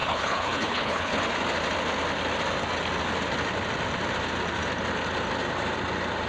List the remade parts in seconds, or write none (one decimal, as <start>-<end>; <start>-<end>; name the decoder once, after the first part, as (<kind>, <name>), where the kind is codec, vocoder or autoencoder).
0.0-1.2 (codec, HILCodec)